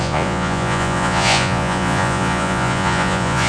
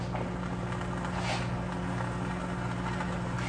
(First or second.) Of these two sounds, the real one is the second